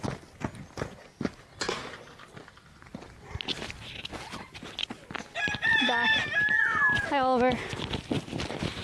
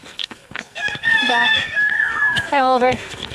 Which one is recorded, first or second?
first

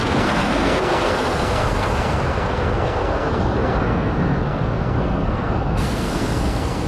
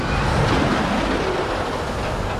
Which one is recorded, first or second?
second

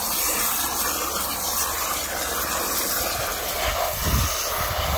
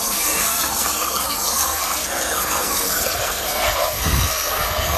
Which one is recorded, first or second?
first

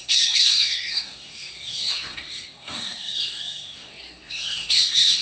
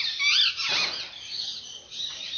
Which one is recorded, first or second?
second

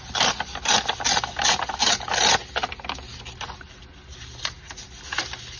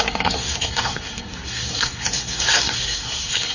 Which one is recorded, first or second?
first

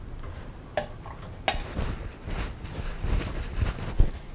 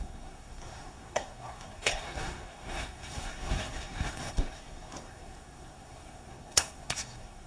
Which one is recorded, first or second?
first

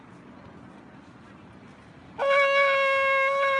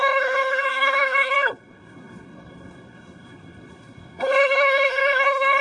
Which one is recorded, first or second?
first